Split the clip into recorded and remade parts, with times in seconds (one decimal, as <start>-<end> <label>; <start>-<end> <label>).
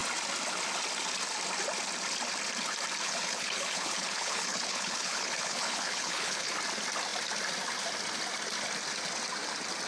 0.0-3.0 recorded; 3.0-6.5 remade; 6.5-9.9 recorded